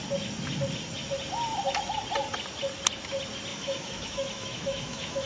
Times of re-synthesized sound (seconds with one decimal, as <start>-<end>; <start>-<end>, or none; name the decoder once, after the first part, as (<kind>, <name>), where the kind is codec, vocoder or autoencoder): 3.5-5.3 (autoencoder, DAC-VAE)